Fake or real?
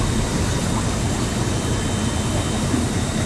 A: real